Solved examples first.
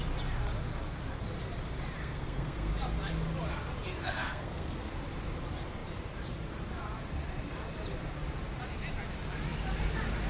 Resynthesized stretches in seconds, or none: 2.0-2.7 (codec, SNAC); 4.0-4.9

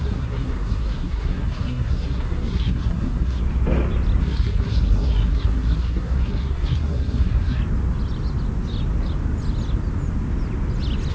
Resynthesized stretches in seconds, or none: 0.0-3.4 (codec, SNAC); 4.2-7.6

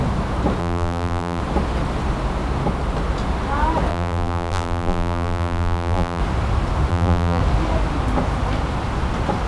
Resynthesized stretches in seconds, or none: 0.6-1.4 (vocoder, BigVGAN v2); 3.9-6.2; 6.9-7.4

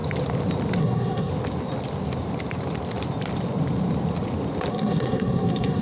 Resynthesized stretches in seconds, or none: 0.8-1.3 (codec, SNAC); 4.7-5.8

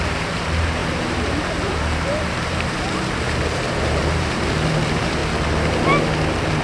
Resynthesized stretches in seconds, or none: 0.0-5.2 (vocoder, BigVGAN v2)